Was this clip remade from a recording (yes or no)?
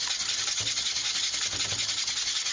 no